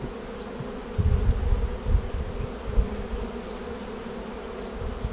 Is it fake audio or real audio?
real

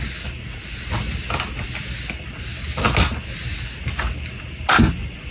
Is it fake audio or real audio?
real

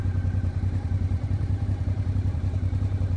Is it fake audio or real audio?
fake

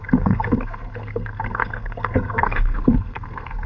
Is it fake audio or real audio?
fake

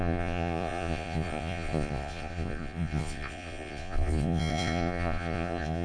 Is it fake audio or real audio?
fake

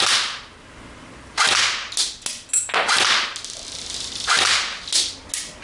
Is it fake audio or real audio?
real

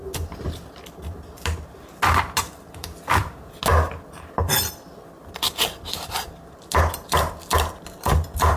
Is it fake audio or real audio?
real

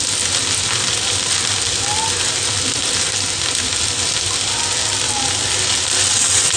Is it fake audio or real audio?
real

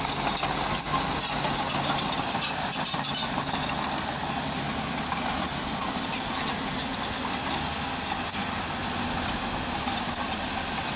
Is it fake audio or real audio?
real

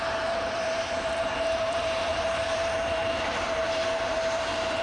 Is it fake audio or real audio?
fake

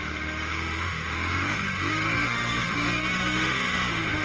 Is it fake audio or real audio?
fake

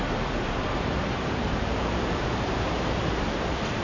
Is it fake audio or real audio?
fake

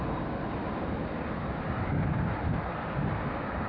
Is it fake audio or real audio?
real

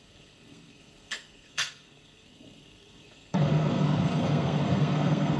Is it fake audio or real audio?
fake